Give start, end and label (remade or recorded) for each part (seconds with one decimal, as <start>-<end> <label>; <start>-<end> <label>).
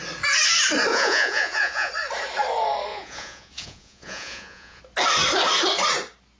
0.0-0.9 recorded; 0.9-1.9 remade; 1.9-2.9 recorded; 2.9-4.8 remade; 4.8-6.4 recorded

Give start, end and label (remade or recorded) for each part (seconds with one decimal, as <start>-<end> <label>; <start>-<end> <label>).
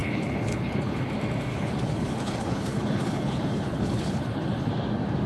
0.0-1.1 remade; 1.1-1.5 recorded; 1.5-4.7 remade; 4.7-5.3 recorded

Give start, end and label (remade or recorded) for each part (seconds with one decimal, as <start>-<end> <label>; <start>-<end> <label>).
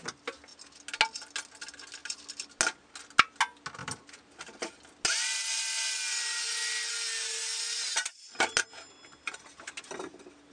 0.0-10.5 recorded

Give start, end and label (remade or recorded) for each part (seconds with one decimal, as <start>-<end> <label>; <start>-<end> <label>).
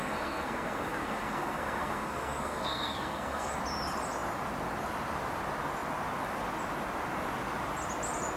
0.0-3.5 remade; 3.5-8.4 recorded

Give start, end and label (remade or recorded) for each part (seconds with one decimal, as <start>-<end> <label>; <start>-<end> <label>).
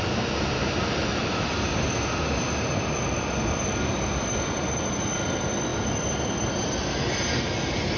0.0-8.0 recorded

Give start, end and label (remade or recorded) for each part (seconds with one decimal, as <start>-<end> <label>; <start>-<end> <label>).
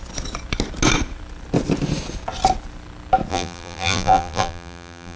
0.0-3.3 recorded; 3.3-5.2 remade